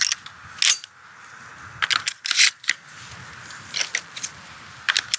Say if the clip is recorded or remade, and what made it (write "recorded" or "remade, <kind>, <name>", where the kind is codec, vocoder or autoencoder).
recorded